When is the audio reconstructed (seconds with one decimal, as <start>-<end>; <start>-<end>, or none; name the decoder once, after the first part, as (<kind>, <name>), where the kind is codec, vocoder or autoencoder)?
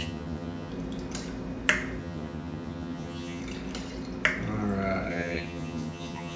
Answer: 0.0-0.7 (vocoder, HiFi-GAN); 2.0-3.4; 5.1-6.4